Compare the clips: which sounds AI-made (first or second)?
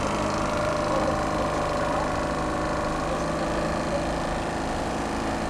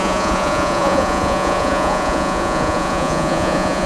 second